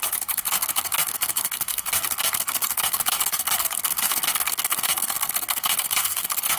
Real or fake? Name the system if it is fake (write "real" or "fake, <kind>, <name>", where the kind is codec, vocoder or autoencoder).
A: fake, codec, SNAC